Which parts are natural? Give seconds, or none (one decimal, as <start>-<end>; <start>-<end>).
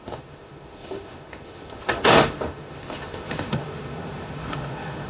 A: none